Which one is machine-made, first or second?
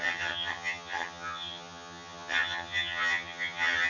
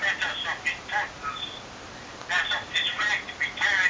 first